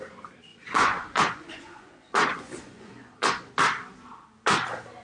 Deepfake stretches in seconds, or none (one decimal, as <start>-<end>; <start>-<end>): 0.5-3.5